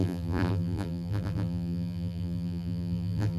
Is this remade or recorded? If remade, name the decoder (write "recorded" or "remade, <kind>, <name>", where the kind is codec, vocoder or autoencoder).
remade, vocoder, BigVGAN v2